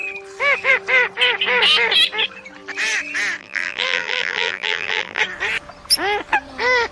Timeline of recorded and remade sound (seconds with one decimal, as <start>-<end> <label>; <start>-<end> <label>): 0.0-3.4 recorded; 3.4-5.2 remade; 5.2-6.9 recorded